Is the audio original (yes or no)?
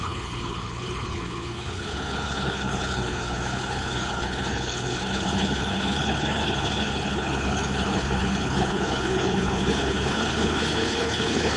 no